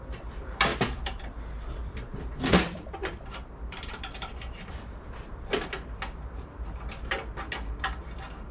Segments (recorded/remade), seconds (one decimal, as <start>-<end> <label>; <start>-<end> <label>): 0.0-0.7 recorded; 0.7-5.0 remade; 5.0-8.5 recorded